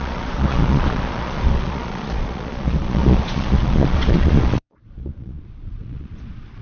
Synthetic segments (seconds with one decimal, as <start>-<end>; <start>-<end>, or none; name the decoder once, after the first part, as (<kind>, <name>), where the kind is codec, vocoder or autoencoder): 0.0-6.6 (vocoder, Vocos)